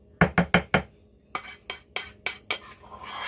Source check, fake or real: real